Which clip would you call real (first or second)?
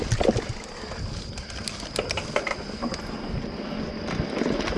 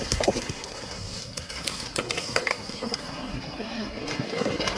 first